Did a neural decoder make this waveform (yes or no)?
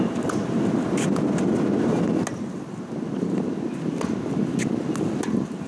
no